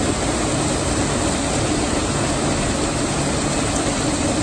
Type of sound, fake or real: real